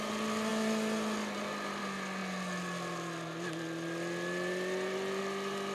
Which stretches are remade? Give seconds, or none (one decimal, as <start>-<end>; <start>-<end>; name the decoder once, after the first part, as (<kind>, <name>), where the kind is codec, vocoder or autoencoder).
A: none